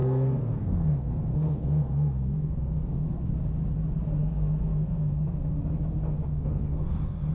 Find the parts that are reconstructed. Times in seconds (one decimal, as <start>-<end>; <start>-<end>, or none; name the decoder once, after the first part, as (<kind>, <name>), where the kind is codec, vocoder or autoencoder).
0.0-3.3 (codec, SNAC); 4.2-5.2; 6.3-7.3